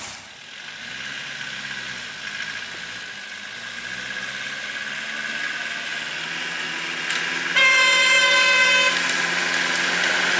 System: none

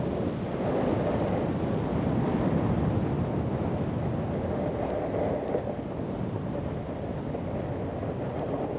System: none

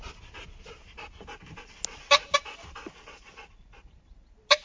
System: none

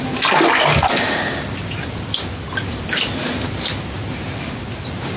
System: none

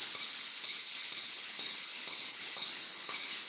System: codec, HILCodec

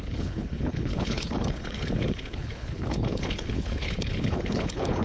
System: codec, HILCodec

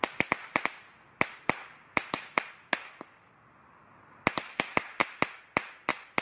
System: none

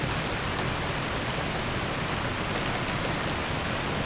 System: none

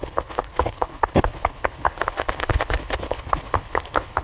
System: codec, HILCodec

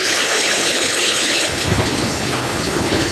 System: codec, HILCodec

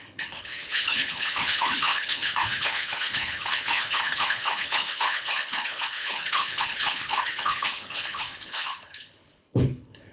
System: codec, HILCodec